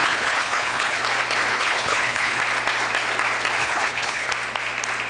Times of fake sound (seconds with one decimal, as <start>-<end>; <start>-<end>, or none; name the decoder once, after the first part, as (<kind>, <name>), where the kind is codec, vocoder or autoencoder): 0.0-1.0 (codec, HILCodec); 1.5-2.4; 3.6-4.3